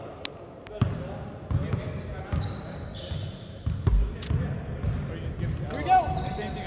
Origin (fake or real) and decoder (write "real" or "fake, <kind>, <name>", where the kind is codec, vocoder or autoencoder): real